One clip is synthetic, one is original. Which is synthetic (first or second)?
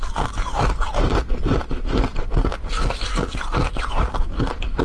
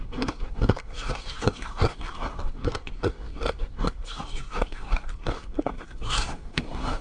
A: second